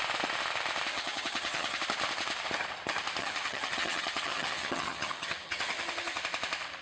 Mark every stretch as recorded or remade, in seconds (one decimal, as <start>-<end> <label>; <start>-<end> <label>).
0.0-0.9 recorded; 0.9-1.8 remade; 1.8-3.2 recorded; 3.2-6.2 remade; 6.2-6.8 recorded